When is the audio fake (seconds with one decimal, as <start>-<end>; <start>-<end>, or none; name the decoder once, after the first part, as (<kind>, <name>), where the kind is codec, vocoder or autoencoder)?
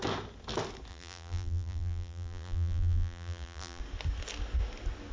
0.9-3.8 (vocoder, BigVGAN v2)